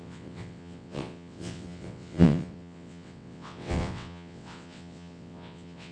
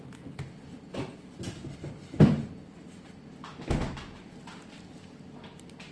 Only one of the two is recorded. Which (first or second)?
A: second